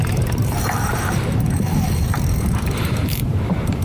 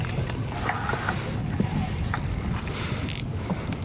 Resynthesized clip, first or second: first